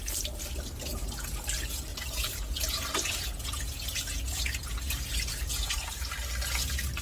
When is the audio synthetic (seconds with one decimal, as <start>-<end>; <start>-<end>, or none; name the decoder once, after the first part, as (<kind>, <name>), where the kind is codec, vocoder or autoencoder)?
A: 1.9-6.1 (vocoder, Vocos)